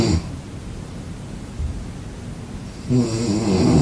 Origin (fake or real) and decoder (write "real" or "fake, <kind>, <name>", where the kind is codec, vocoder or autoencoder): real